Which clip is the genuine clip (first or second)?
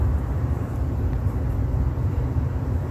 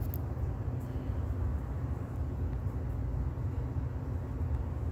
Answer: second